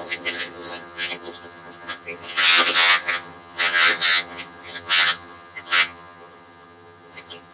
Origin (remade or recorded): remade